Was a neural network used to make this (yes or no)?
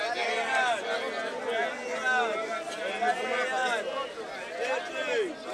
no